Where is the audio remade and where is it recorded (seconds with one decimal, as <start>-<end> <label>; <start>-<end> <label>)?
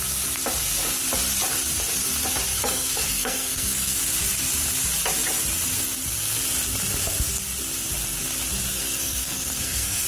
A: 0.0-2.5 recorded; 2.5-4.0 remade; 4.0-8.7 recorded; 8.7-10.1 remade